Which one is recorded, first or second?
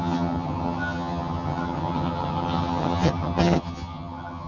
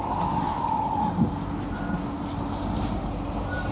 second